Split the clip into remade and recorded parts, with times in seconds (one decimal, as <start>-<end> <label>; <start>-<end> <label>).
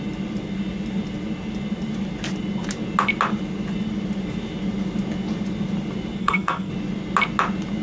0.0-6.2 recorded; 6.2-6.7 remade; 6.7-7.8 recorded